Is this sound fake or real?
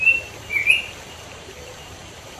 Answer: fake